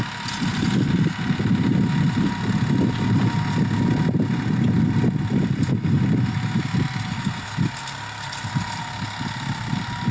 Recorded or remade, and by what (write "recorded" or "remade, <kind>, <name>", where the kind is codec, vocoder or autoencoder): recorded